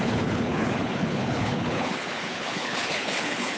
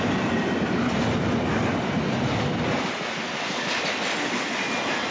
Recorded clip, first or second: second